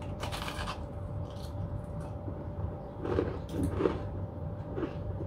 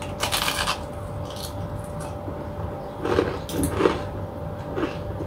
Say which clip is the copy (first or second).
first